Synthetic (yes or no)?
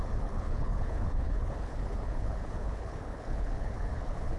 yes